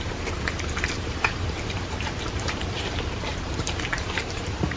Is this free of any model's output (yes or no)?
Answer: no